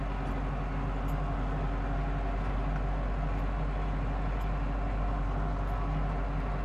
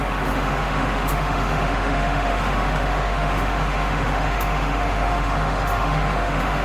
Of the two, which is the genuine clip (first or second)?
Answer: first